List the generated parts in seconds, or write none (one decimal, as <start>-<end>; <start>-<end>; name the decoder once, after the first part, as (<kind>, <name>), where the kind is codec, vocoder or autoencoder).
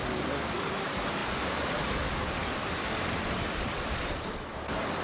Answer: 1.2-1.9 (vocoder, BigVGAN v2); 2.4-4.5